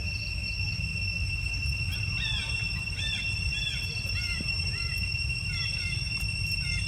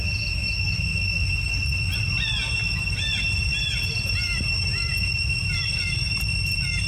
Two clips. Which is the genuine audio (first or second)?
second